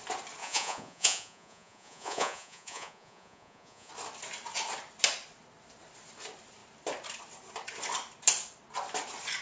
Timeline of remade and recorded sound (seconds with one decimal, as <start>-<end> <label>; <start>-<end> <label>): 0.0-0.4 recorded; 0.4-3.9 remade; 3.9-9.4 recorded